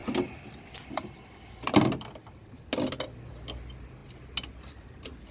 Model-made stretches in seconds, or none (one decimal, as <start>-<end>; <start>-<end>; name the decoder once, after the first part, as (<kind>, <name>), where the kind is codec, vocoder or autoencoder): none